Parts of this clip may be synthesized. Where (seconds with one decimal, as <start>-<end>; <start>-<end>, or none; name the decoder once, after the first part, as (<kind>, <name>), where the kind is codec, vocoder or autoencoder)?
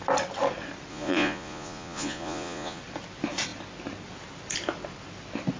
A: 0.9-2.8 (vocoder, Vocos)